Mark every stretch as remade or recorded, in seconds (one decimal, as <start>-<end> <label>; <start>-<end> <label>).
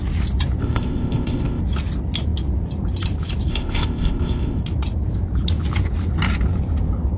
0.0-0.6 recorded; 0.6-1.6 remade; 1.6-3.5 recorded; 3.5-4.6 remade; 4.6-7.2 recorded